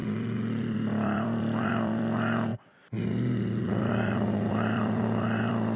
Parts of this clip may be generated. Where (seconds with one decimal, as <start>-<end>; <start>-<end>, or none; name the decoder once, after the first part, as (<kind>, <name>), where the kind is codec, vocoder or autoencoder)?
0.0-2.5 (vocoder, BigVGAN v2); 3.6-5.8